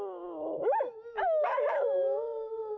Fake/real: fake